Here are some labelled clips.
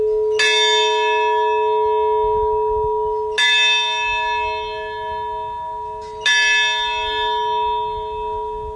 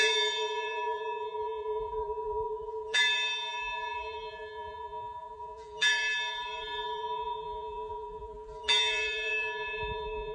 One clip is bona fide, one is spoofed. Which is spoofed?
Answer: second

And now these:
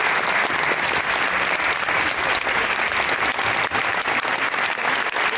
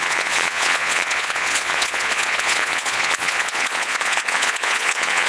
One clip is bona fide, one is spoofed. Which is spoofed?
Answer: second